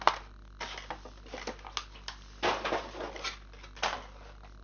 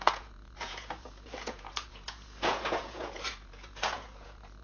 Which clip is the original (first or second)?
first